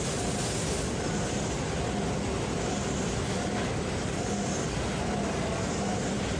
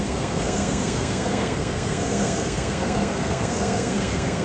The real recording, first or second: first